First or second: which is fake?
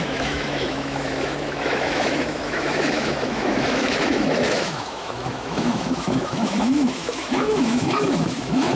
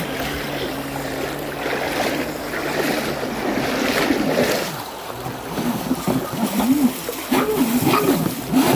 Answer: first